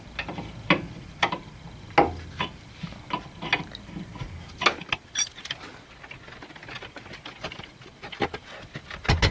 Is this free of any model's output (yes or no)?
yes